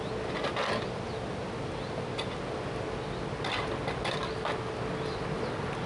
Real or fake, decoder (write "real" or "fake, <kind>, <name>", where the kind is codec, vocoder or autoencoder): real